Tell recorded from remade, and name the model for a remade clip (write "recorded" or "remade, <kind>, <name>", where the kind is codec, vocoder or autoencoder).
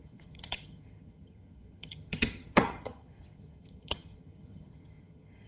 remade, vocoder, HiFi-GAN